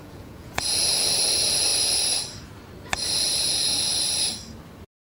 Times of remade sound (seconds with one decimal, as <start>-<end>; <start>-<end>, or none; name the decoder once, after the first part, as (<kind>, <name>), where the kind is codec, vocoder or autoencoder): 0.0-0.6 (vocoder, Vocos)